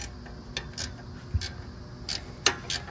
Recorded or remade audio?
recorded